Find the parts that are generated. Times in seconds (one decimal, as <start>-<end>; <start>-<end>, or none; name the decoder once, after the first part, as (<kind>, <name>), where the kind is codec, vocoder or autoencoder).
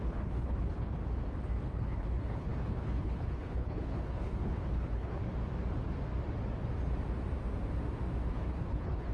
0.0-1.0 (codec, HILCodec); 1.6-5.2; 8.3-9.1